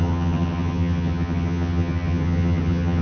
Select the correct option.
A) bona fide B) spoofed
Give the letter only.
B